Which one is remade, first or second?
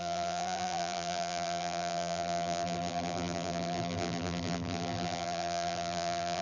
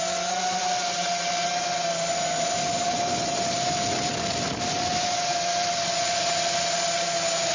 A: first